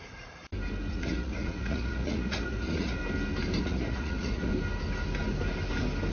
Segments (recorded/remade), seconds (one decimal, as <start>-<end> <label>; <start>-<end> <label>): 0.0-0.4 remade; 0.4-0.9 recorded; 0.9-3.0 remade; 3.0-3.6 recorded; 3.6-4.5 remade; 4.5-6.1 recorded